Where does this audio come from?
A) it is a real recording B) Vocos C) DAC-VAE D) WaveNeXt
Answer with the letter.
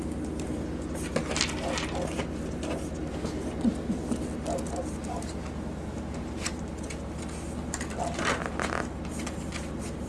A